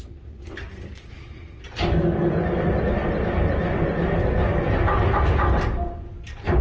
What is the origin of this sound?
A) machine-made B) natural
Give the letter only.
B